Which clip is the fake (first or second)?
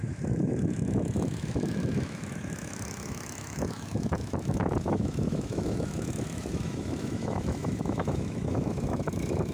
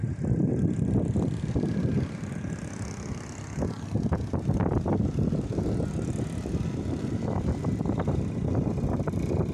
first